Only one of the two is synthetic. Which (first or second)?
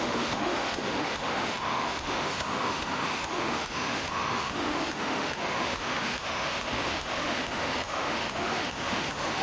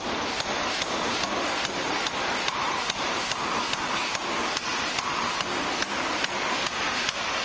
first